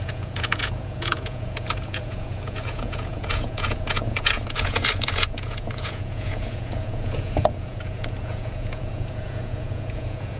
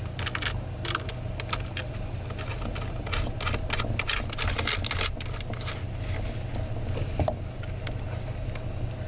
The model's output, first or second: first